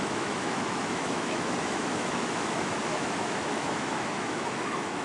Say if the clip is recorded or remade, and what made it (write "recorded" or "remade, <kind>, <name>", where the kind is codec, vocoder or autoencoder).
remade, autoencoder, DAC-VAE